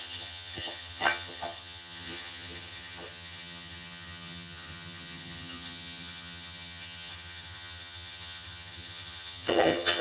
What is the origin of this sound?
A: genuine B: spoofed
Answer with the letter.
B